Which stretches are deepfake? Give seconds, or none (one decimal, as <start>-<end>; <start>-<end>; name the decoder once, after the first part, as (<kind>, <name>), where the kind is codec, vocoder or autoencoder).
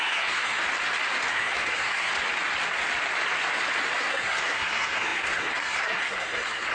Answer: 0.0-0.6 (codec, SNAC); 1.3-2.1; 4.0-6.7